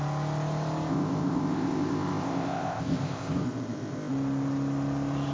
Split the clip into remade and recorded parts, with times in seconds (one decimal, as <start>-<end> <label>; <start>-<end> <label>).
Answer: 0.0-0.9 recorded; 0.9-4.1 remade; 4.1-5.3 recorded

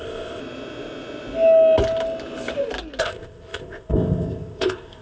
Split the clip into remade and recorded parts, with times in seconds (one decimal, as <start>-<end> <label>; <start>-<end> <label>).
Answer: 0.0-0.4 remade; 0.4-3.0 recorded; 3.0-5.0 remade

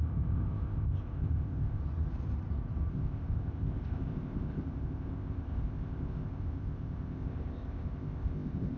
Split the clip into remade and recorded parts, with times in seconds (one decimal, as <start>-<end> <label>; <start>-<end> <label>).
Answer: 0.0-1.8 remade; 1.8-2.9 recorded; 2.9-8.8 remade

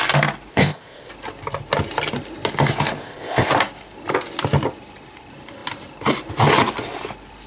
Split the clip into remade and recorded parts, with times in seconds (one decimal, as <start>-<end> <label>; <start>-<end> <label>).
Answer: 0.0-0.5 recorded; 0.5-1.1 remade; 1.1-3.0 recorded; 3.0-3.5 remade; 3.5-7.5 recorded

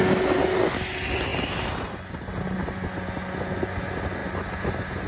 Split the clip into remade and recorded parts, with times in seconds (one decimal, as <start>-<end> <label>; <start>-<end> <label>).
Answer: 0.0-5.1 recorded